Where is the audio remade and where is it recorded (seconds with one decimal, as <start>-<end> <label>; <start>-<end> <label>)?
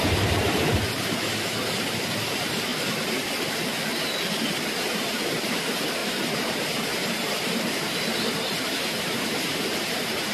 0.0-2.7 remade; 2.7-4.9 recorded; 4.9-10.3 remade